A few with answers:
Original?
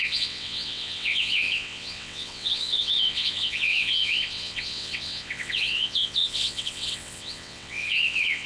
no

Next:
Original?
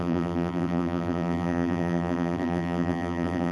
no